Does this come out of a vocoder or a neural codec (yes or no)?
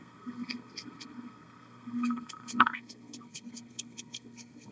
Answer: yes